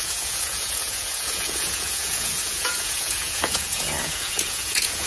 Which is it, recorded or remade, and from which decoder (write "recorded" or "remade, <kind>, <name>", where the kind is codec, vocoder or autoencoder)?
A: remade, vocoder, Vocos